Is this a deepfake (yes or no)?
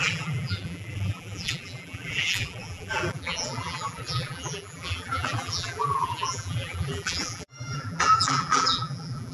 yes